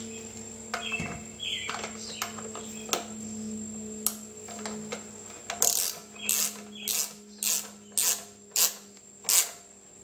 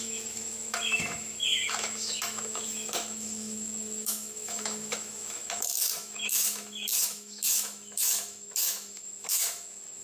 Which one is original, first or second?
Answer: first